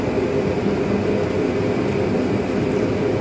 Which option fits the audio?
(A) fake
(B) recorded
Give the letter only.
B